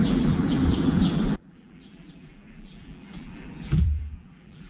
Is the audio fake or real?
fake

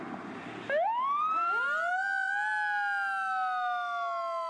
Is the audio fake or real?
real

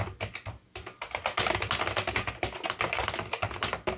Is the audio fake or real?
real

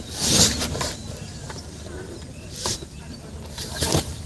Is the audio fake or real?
fake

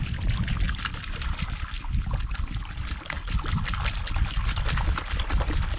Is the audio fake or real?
real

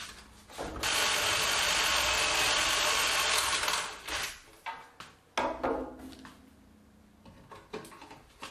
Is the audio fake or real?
real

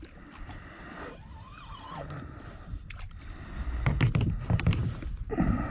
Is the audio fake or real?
fake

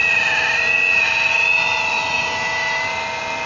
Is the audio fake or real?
real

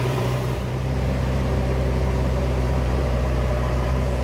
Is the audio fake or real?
fake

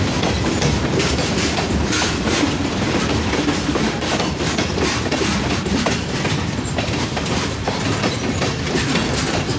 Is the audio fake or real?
fake